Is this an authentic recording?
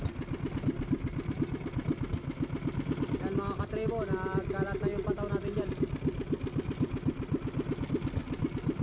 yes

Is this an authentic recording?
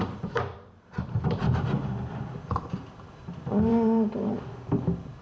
no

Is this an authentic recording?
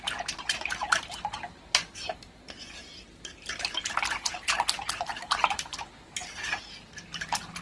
no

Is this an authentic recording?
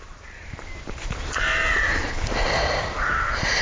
no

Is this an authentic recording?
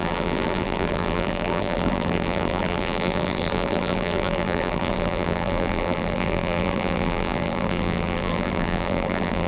no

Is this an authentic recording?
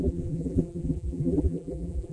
no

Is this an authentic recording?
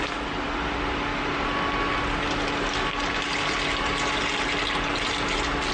yes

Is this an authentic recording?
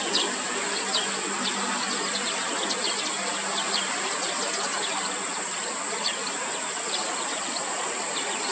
yes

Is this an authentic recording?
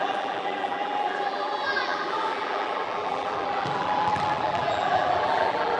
no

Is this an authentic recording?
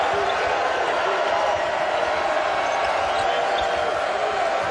yes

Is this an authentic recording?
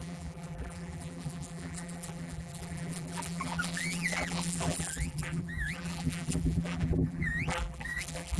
no